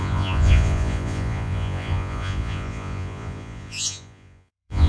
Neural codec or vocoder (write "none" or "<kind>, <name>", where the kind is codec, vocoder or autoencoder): vocoder, Vocos